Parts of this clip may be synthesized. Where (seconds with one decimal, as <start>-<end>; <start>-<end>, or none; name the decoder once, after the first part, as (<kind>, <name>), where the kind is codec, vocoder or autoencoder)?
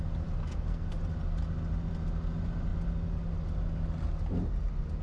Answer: 0.4-1.0 (codec, SNAC)